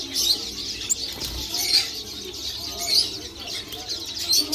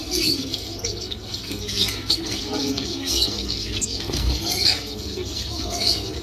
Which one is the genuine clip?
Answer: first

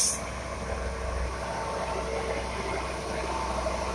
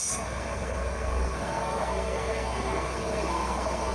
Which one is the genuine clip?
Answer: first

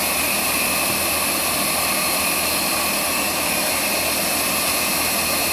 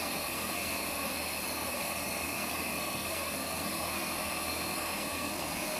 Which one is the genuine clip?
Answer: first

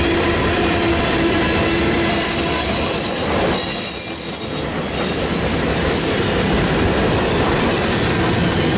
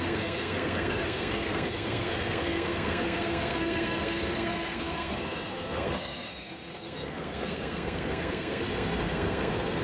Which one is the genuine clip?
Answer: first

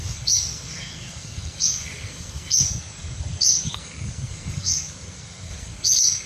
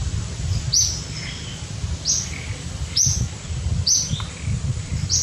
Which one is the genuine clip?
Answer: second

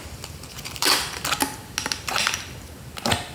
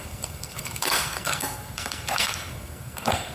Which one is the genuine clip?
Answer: first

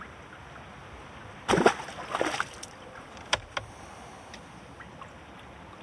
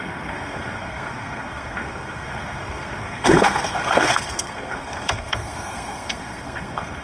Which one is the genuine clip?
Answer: first